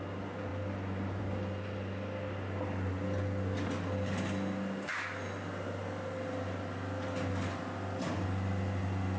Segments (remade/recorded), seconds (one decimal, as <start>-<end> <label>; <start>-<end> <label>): 0.0-9.2 recorded